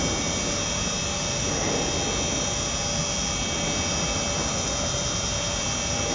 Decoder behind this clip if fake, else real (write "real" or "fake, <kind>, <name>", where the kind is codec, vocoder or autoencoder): real